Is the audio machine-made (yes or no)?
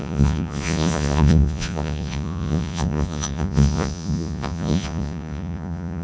yes